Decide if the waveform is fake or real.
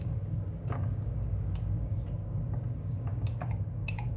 fake